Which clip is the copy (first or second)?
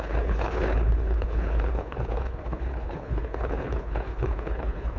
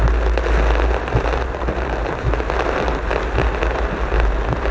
first